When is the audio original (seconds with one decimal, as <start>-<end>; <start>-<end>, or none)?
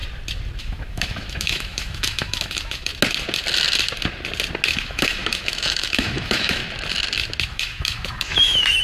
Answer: 0.0-0.6; 2.9-4.7; 6.6-7.5